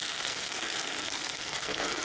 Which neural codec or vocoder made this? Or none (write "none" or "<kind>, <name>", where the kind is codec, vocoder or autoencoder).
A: codec, SNAC